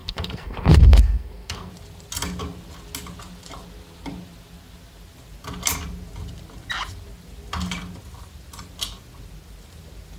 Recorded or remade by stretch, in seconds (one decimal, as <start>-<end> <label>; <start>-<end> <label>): 0.0-1.7 remade; 1.7-10.2 recorded